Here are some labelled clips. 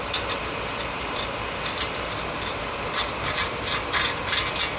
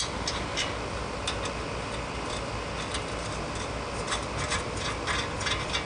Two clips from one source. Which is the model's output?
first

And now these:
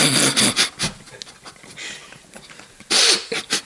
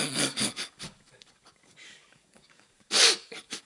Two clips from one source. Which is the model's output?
second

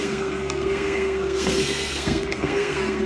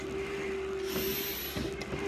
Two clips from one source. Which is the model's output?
first